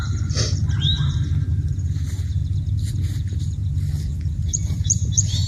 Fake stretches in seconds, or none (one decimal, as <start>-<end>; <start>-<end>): 0.0-0.6; 1.7-2.4; 2.9-3.6; 4.3-5.5